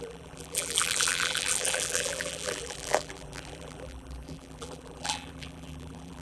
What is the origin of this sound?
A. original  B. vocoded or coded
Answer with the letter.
B